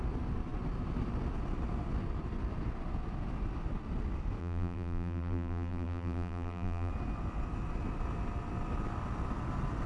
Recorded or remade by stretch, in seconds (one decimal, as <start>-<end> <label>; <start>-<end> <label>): 0.0-4.4 recorded; 4.4-6.9 remade; 6.9-9.9 recorded